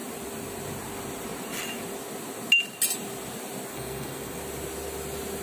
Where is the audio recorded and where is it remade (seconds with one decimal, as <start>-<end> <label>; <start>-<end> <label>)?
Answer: 0.0-3.7 recorded; 3.7-4.4 remade; 4.4-5.4 recorded